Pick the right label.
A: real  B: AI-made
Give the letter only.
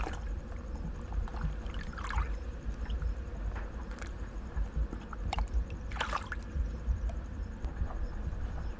B